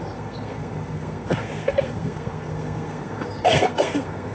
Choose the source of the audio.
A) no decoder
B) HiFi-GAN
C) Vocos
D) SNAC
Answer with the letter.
D